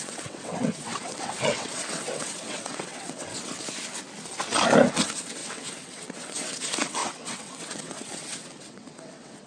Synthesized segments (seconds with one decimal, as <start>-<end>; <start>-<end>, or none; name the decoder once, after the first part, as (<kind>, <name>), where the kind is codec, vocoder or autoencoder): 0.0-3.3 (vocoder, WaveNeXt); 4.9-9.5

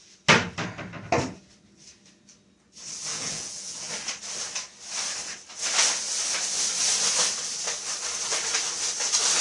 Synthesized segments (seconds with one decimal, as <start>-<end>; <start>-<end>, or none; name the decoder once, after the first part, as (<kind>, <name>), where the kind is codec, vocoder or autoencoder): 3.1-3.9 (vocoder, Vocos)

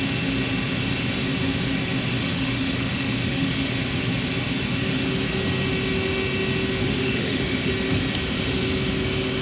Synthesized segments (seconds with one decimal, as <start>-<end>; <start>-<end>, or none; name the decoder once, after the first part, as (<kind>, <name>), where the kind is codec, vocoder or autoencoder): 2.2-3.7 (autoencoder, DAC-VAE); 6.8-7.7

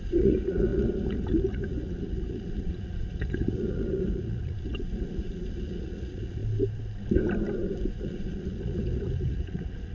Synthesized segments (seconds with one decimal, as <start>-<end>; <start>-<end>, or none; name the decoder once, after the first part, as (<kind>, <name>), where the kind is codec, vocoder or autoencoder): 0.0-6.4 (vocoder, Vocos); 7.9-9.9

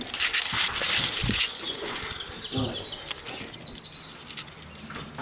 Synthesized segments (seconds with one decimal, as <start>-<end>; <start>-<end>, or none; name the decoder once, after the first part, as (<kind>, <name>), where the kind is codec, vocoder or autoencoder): 1.2-2.0 (vocoder, Vocos)

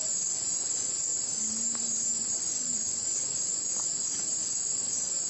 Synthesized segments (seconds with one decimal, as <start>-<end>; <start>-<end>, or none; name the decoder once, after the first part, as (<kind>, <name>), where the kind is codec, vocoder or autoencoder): 0.0-1.1 (vocoder, Vocos); 2.4-5.3

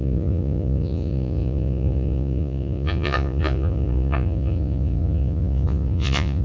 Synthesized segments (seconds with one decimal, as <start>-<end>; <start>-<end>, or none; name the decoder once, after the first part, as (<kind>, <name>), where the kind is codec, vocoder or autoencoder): 0.0-6.4 (vocoder, Vocos)

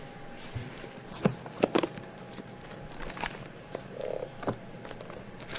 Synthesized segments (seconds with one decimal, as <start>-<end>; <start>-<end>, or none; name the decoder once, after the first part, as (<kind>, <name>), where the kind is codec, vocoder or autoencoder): 0.6-4.0 (vocoder, BigVGAN v2)